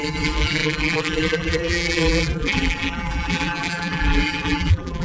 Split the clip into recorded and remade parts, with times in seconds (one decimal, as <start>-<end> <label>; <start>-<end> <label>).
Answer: 0.0-5.0 remade

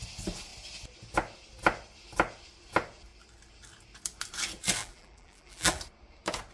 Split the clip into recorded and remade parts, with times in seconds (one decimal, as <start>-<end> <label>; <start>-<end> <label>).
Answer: 0.0-4.8 recorded; 4.8-5.8 remade; 5.8-6.5 recorded

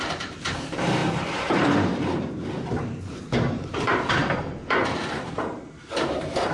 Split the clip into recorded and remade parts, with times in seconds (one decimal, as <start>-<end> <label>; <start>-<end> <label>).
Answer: 0.0-4.2 remade; 4.2-4.8 recorded; 4.8-6.5 remade

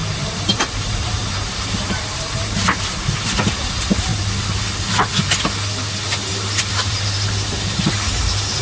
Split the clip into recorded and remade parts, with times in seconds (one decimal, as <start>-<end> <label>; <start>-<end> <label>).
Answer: 0.0-4.1 remade; 4.1-6.6 recorded; 6.6-8.6 remade

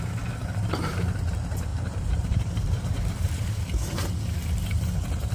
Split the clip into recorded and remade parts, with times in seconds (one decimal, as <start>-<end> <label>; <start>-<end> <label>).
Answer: 0.0-1.7 recorded; 1.7-3.3 remade; 3.3-5.3 recorded

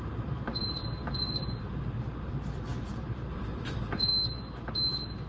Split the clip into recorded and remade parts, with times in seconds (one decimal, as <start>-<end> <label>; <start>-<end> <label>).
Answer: 0.0-4.1 remade; 4.1-5.3 recorded

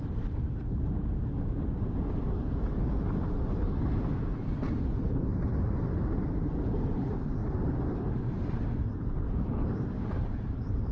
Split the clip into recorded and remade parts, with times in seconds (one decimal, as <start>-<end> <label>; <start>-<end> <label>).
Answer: 0.0-4.7 recorded; 4.7-10.9 remade